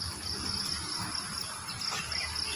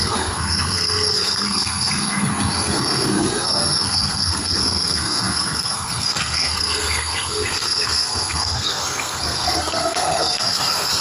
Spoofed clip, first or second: second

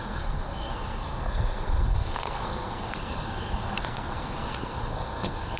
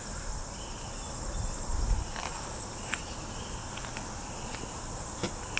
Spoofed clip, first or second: first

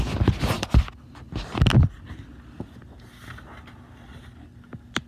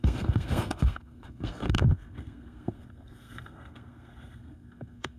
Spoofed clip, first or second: second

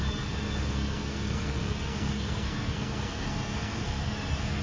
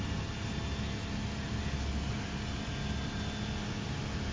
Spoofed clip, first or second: first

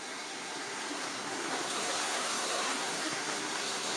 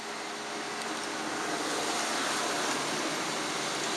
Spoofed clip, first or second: first